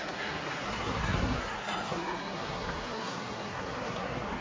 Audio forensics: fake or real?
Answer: fake